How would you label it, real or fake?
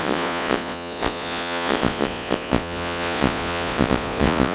fake